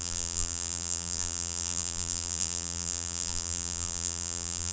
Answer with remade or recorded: remade